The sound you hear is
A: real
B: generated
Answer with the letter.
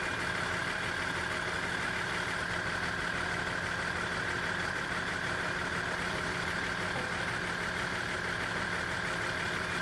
A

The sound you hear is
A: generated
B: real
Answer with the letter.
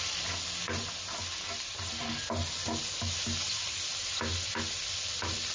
B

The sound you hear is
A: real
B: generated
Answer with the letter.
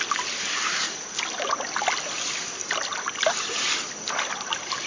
A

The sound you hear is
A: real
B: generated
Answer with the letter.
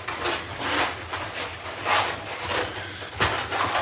A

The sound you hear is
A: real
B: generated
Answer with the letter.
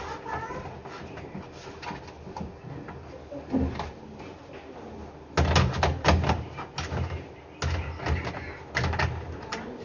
A